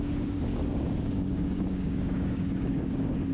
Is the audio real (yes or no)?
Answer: no